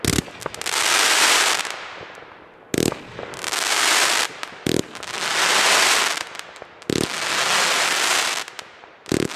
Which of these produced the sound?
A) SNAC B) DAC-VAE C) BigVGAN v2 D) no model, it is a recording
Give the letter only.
D